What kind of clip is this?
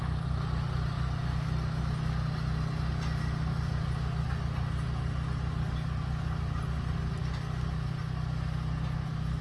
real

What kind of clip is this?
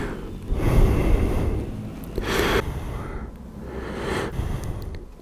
real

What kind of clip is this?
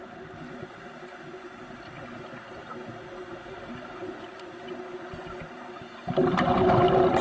real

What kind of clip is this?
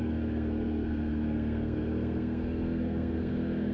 fake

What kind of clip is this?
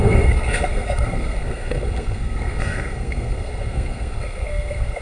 fake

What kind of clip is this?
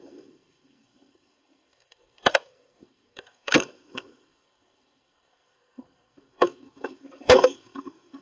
fake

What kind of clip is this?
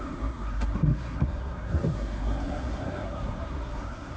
fake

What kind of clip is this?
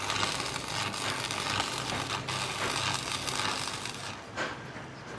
real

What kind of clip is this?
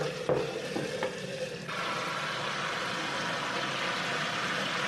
real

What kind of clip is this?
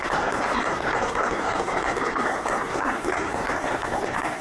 fake